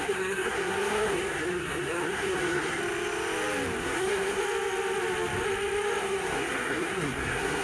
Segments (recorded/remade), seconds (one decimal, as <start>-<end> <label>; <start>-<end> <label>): 0.0-2.8 remade; 2.8-3.8 recorded; 3.8-4.4 remade; 4.4-6.0 recorded; 6.0-7.6 remade